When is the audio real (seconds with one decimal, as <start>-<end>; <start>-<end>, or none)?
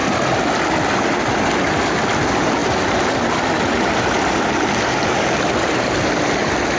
0.0-6.8